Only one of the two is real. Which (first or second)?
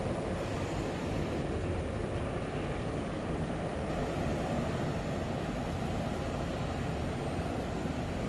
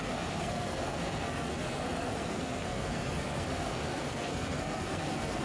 first